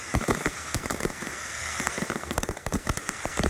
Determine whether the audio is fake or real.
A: fake